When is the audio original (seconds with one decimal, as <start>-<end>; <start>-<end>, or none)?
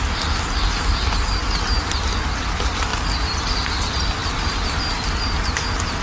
0.0-4.2; 5.0-6.0